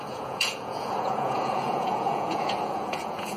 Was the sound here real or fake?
fake